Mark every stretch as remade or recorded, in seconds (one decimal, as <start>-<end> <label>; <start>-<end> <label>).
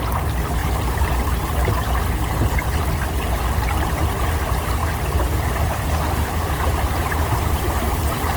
0.0-8.4 recorded